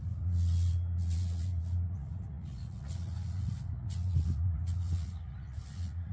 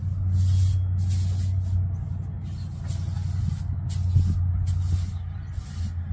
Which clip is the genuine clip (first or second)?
second